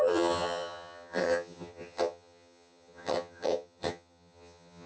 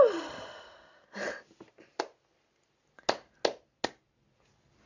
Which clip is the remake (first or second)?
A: first